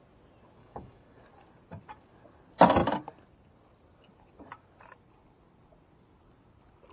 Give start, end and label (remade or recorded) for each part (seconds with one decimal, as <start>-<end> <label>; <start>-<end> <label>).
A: 0.0-0.6 recorded; 0.6-1.2 remade; 1.2-6.9 recorded